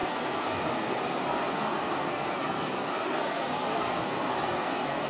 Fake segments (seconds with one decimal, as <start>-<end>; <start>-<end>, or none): 0.0-5.1